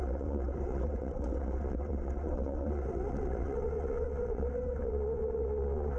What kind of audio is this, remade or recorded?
remade